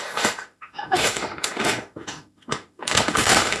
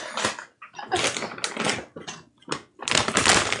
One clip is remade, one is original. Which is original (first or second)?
second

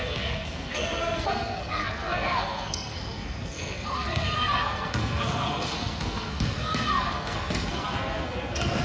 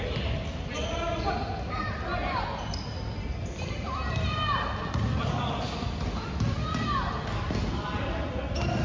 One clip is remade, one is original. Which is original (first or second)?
second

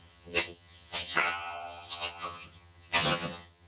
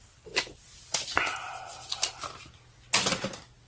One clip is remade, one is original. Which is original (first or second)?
second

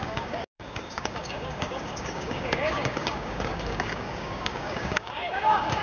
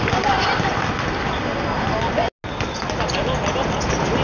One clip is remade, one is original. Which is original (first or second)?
second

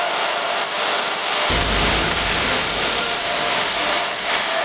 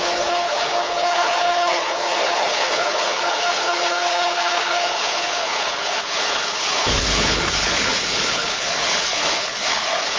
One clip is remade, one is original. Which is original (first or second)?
first